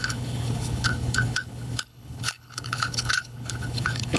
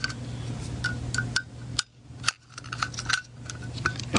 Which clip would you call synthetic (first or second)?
first